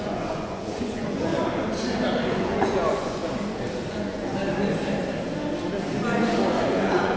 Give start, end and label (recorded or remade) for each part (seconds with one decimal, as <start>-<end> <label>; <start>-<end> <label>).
0.0-1.3 remade; 1.3-2.3 recorded; 2.3-3.2 remade; 3.2-3.9 recorded; 3.9-4.4 remade; 4.4-6.5 recorded; 6.5-7.2 remade